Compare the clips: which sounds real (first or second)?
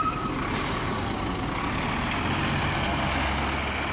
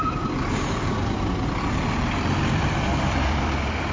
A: first